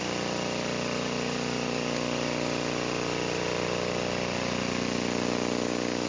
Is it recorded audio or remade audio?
recorded